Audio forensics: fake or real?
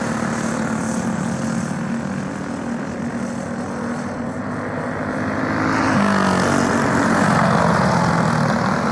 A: real